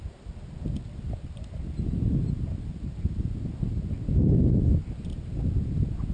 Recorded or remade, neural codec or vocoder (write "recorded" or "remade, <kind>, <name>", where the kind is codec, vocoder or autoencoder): recorded